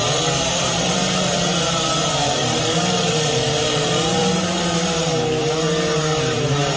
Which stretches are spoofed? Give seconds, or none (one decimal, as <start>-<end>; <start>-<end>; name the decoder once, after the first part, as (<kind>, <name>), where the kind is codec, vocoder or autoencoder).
0.0-6.8 (vocoder, BigVGAN v2)